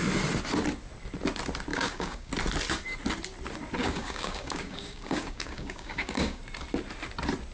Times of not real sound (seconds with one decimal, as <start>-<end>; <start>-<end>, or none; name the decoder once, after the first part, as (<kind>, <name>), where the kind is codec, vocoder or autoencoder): 1.7-2.3 (codec, DAC); 3.8-6.4